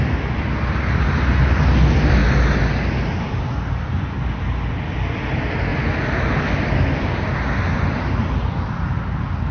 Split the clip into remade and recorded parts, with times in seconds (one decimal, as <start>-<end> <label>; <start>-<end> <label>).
0.0-9.5 recorded